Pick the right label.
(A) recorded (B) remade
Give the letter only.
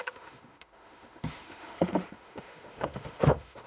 B